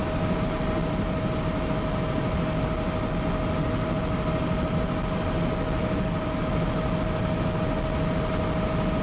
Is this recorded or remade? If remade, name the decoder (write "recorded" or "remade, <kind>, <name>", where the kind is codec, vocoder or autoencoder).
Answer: recorded